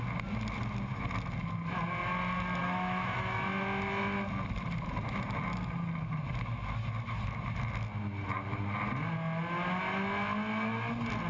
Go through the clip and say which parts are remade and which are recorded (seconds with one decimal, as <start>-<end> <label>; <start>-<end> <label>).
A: 0.0-2.6 recorded; 2.6-3.4 remade; 3.4-11.3 recorded